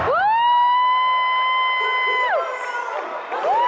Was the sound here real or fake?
real